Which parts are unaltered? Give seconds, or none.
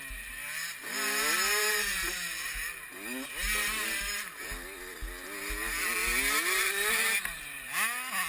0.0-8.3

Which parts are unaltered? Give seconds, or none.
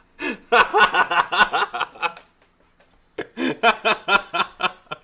0.0-5.0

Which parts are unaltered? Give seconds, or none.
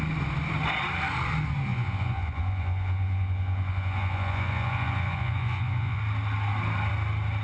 0.0-1.7; 6.0-7.4